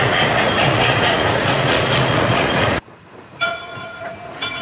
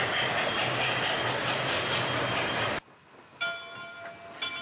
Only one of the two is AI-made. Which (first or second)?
first